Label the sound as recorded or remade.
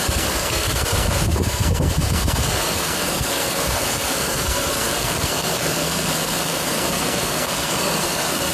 remade